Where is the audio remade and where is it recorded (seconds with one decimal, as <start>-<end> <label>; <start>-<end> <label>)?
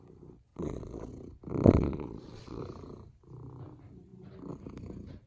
0.0-0.5 recorded; 0.5-1.1 remade; 1.1-1.5 recorded; 1.5-2.6 remade; 2.6-5.3 recorded